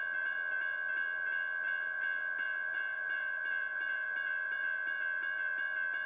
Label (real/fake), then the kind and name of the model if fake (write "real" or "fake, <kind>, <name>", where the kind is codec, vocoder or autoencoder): fake, vocoder, BigVGAN v2